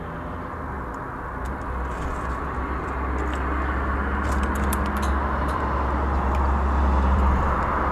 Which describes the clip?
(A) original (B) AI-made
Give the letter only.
B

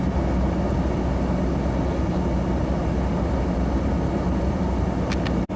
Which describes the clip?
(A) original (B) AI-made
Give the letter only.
A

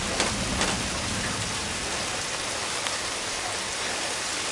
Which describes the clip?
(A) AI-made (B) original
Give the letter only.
A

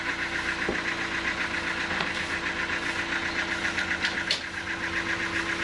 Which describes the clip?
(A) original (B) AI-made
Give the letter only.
A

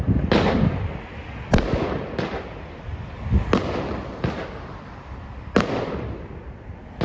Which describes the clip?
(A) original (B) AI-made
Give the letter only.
A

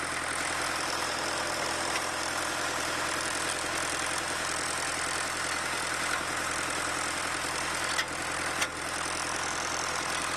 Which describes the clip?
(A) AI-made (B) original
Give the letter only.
B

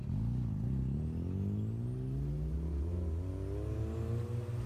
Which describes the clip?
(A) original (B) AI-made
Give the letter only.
A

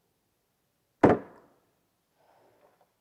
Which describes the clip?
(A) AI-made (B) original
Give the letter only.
B